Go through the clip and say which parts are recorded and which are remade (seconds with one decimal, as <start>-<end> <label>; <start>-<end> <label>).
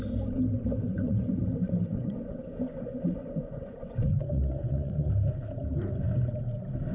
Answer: 0.0-0.9 recorded; 0.9-1.4 remade; 1.4-1.9 recorded; 1.9-5.1 remade; 5.1-6.9 recorded